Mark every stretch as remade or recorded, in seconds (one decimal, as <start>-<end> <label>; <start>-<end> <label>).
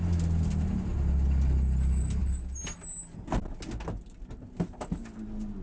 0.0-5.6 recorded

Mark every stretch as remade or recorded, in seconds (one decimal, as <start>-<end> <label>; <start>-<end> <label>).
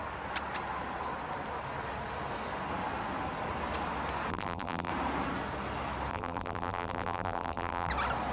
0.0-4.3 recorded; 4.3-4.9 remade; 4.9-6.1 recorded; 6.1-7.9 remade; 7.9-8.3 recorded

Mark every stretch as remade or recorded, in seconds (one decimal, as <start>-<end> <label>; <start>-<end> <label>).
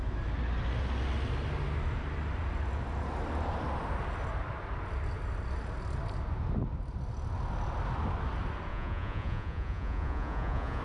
0.0-8.7 recorded; 8.7-10.8 remade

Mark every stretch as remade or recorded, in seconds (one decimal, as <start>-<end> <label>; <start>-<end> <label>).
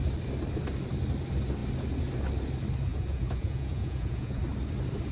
0.0-2.9 recorded; 2.9-4.4 remade; 4.4-5.1 recorded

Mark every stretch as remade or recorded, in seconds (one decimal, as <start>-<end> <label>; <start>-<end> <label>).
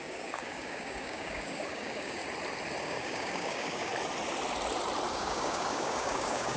0.0-2.2 remade; 2.2-2.8 recorded; 2.8-3.9 remade; 3.9-5.1 recorded; 5.1-6.6 remade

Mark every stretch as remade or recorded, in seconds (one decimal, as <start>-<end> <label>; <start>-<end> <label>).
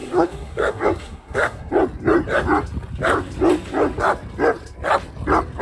0.0-1.7 remade; 1.7-5.6 recorded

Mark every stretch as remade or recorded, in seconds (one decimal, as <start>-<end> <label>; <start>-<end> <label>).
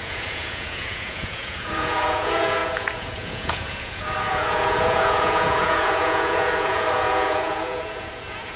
0.0-8.6 remade